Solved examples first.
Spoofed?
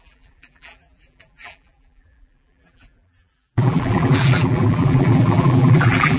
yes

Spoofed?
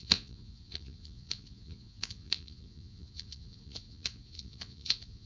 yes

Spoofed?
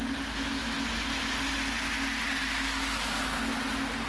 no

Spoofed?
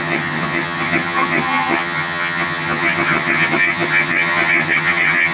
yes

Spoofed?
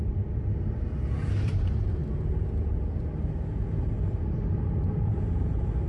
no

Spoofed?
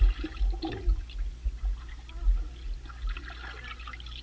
no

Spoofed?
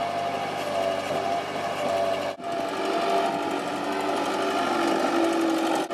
no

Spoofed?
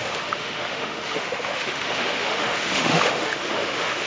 yes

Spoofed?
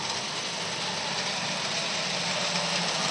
no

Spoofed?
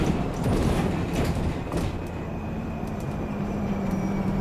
yes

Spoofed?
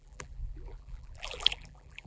yes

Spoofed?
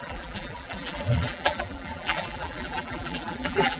yes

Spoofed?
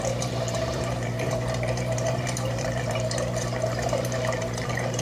yes